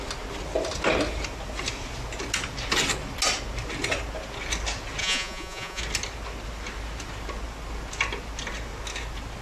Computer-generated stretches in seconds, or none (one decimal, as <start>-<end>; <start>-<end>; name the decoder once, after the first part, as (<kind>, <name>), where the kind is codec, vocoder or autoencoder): 5.0-5.8 (vocoder, Vocos)